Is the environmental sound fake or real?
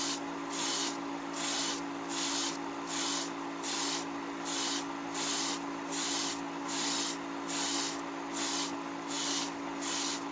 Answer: real